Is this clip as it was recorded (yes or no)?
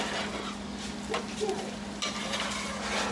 yes